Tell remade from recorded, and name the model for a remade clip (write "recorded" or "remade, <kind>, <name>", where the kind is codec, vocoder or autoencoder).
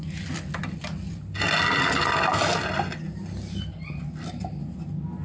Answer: recorded